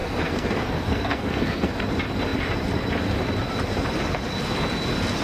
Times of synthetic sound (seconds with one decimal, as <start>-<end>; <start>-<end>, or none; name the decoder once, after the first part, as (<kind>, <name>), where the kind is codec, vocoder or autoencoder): 0.0-1.8 (codec, SNAC)